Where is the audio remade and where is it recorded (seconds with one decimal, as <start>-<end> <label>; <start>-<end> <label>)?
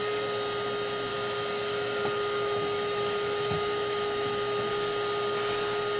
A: 0.0-1.1 recorded; 1.1-4.7 remade; 4.7-6.0 recorded